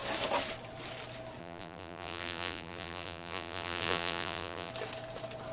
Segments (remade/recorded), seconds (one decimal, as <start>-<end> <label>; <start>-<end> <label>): 0.0-1.4 recorded; 1.4-4.7 remade; 4.7-5.5 recorded

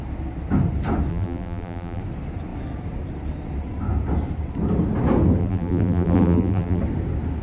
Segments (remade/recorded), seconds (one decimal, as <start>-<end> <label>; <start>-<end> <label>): 0.0-1.1 recorded; 1.1-2.0 remade; 2.0-5.4 recorded; 5.4-6.8 remade; 6.8-7.4 recorded

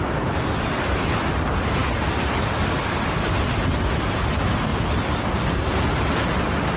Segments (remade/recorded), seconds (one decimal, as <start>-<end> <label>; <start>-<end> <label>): 0.0-6.8 recorded

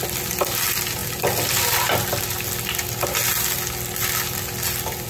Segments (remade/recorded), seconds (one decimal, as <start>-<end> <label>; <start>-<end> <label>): 0.0-5.1 recorded